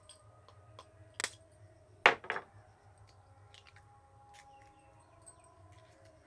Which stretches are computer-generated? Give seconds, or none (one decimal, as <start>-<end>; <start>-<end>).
none